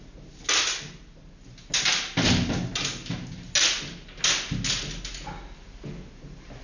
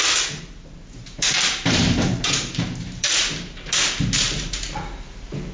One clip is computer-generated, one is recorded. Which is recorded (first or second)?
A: first